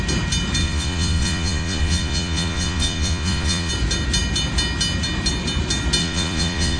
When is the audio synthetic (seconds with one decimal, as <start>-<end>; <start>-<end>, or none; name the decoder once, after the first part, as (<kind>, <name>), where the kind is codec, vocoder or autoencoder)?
0.6-3.7 (vocoder, Vocos); 6.0-6.8